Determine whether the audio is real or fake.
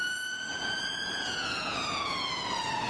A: fake